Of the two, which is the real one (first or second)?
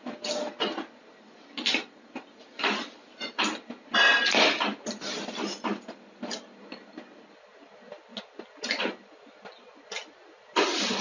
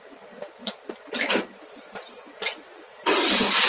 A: first